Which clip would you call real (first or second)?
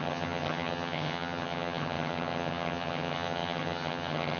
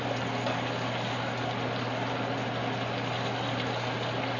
second